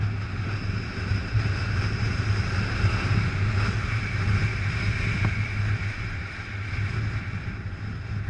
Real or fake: real